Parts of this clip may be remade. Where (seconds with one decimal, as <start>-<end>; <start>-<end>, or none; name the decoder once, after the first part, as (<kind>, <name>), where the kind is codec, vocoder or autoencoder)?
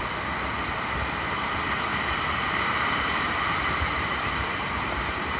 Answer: 1.9-5.4 (vocoder, BigVGAN v2)